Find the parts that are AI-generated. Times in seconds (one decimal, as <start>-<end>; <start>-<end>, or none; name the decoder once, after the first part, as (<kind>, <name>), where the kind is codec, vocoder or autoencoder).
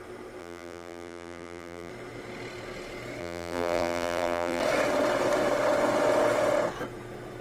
0.4-1.9 (vocoder, BigVGAN v2); 3.2-4.6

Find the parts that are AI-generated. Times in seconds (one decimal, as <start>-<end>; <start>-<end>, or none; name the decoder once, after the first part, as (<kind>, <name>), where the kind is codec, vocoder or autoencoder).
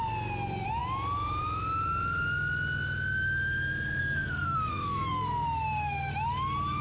4.0-6.1 (codec, SNAC)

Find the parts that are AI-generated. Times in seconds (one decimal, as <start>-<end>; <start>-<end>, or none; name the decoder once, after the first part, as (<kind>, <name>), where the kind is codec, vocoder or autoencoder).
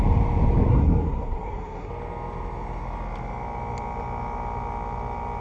0.7-1.9 (codec, SNAC)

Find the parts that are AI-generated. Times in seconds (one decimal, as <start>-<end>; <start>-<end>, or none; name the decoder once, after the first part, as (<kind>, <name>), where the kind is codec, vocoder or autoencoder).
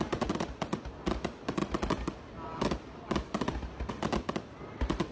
none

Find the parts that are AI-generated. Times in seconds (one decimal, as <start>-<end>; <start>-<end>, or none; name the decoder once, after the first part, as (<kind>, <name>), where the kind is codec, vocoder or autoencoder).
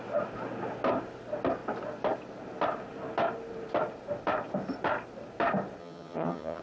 5.8-6.6 (vocoder, HiFi-GAN)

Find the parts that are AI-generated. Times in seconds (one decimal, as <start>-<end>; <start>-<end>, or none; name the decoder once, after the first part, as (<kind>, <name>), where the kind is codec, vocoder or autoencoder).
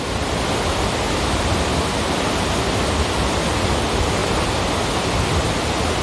none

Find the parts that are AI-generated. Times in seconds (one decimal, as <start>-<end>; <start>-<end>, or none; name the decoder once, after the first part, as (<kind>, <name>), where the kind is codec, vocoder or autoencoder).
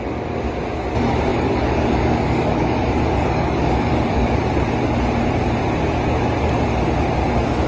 1.3-4.4 (codec, DAC)